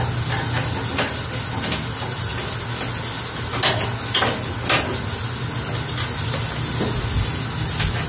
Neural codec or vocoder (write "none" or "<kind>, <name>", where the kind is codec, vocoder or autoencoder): none